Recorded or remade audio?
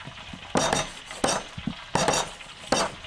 recorded